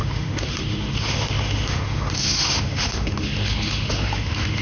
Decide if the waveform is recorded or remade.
remade